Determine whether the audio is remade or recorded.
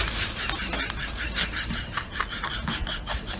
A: recorded